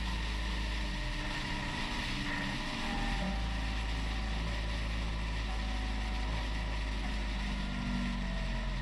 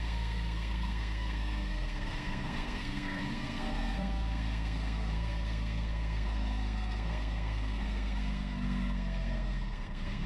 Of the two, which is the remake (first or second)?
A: second